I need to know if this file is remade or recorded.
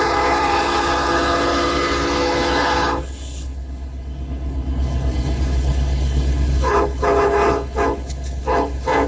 remade